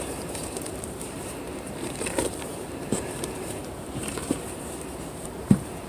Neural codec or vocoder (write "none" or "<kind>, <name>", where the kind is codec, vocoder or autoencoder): vocoder, BigVGAN v2